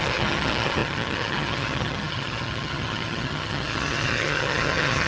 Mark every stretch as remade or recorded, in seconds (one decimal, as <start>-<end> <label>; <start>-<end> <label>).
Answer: 0.0-5.1 remade